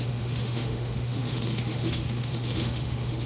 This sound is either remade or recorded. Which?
remade